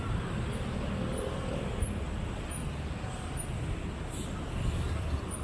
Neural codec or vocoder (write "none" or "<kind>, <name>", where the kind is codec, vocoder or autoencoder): none